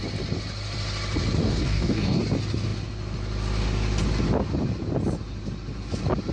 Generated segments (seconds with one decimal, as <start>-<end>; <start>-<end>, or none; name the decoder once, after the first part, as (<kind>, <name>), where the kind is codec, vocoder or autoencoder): 1.4-2.2 (codec, DAC)